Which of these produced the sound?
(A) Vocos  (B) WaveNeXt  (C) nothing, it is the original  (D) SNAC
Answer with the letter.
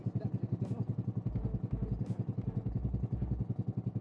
C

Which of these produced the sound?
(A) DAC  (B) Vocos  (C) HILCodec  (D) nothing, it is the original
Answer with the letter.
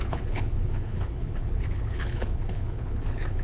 C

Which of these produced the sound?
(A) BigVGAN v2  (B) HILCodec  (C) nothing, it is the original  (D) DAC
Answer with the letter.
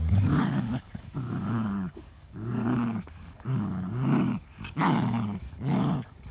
D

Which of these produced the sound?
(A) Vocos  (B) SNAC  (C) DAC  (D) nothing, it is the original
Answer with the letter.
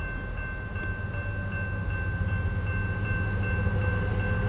D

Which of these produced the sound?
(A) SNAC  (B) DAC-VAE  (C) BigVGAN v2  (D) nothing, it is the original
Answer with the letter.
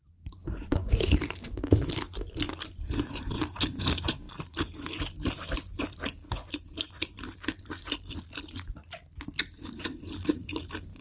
C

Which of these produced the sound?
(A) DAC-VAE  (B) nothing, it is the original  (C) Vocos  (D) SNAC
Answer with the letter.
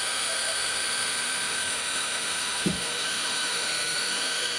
A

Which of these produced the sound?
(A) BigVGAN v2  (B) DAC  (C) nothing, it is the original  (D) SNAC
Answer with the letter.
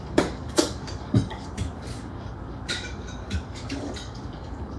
B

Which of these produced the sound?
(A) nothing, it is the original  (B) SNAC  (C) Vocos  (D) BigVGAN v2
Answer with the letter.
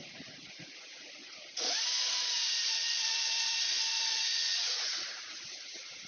C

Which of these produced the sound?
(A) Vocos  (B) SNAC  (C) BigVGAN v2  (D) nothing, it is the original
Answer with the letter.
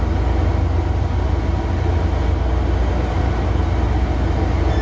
D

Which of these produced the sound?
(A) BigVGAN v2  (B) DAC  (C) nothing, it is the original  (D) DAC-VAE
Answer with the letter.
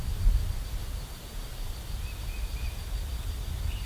C